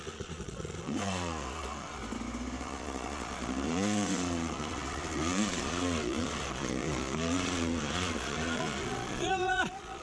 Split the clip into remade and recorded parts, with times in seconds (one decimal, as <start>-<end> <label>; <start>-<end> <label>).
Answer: 0.0-2.0 remade; 2.0-2.6 recorded; 2.6-10.0 remade